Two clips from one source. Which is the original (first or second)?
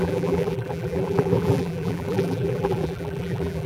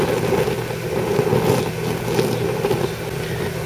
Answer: second